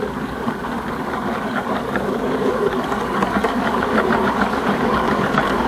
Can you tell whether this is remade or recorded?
remade